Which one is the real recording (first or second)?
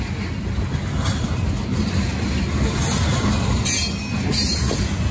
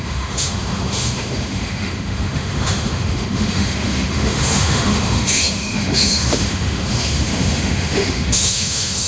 first